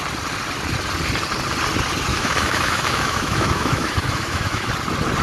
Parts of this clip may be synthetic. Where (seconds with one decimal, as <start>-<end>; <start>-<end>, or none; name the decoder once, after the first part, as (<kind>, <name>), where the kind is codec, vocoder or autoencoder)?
2.1-4.7 (autoencoder, DAC-VAE)